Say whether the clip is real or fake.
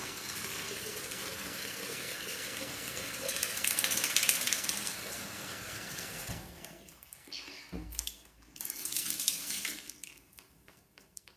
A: fake